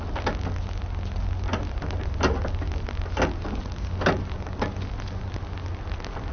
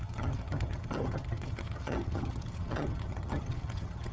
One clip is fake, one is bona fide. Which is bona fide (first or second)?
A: first